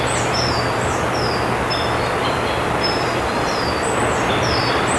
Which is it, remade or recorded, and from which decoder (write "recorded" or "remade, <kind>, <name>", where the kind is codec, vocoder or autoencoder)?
recorded